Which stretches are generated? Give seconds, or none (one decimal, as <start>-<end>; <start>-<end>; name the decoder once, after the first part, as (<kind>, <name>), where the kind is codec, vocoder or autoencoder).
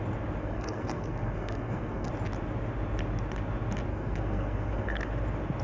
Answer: 0.4-2.1 (codec, SNAC); 3.9-5.1